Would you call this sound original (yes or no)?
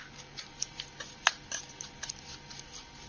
yes